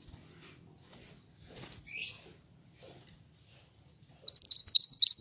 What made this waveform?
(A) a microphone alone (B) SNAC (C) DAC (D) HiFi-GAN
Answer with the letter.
A